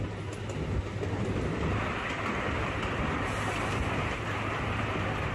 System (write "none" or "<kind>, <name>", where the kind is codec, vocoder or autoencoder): none